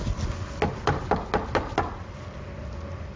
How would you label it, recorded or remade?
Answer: recorded